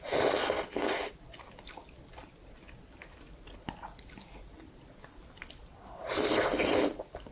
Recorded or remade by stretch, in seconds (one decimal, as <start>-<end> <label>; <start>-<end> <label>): 0.0-7.3 recorded